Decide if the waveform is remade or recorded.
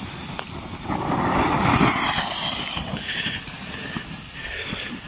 recorded